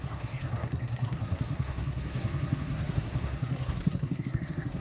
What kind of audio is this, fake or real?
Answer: fake